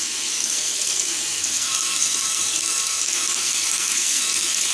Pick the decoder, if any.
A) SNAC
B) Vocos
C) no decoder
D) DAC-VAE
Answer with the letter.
A